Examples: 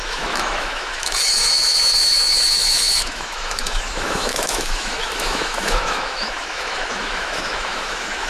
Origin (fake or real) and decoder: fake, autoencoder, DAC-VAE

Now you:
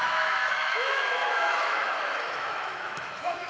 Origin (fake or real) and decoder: fake, autoencoder, DAC-VAE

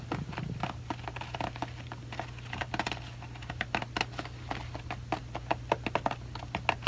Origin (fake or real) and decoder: real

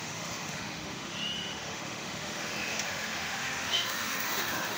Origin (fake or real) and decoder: fake, autoencoder, DAC-VAE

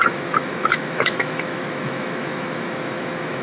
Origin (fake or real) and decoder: fake, autoencoder, DAC-VAE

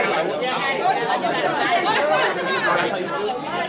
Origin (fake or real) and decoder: real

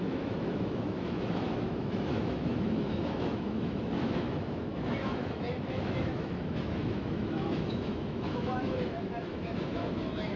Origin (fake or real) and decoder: fake, autoencoder, DAC-VAE